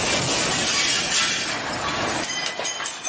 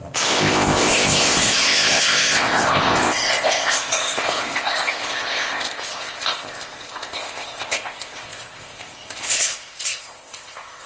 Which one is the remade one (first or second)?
second